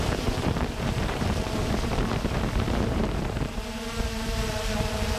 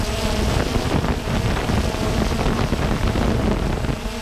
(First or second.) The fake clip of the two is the first